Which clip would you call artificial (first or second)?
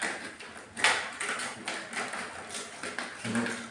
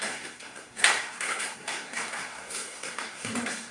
second